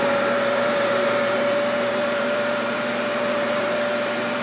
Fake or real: fake